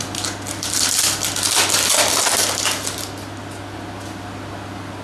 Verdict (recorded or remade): recorded